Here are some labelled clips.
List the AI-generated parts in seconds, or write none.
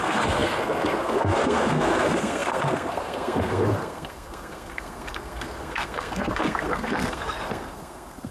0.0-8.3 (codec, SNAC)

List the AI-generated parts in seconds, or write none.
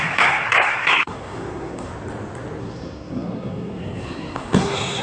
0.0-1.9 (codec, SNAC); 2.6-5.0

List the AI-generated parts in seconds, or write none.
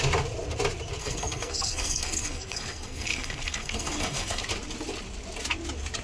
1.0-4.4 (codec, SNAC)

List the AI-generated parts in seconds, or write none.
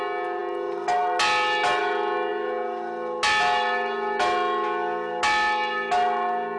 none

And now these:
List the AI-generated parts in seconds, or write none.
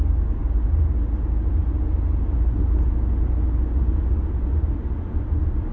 none